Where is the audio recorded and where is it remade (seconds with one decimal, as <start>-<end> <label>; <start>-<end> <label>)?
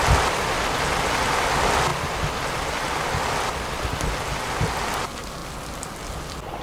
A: 0.0-6.6 recorded